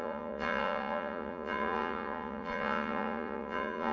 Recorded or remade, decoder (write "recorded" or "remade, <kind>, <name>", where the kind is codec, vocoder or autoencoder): remade, vocoder, Vocos